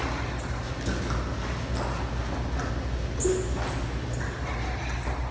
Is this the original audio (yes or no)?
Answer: yes